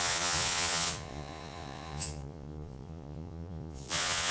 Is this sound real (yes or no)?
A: no